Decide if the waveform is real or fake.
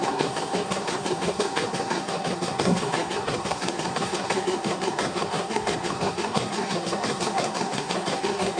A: fake